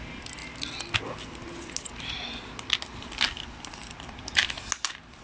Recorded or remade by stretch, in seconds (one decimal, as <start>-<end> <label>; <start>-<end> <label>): 0.0-5.2 recorded